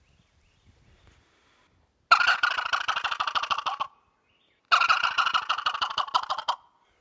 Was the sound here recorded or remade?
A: recorded